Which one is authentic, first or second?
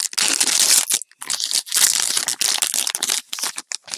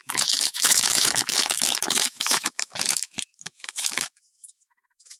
first